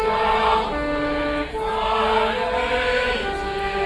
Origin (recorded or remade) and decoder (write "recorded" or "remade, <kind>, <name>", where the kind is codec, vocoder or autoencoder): recorded